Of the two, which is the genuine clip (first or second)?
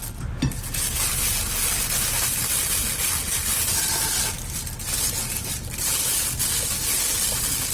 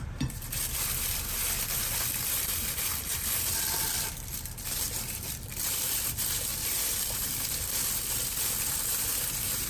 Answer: first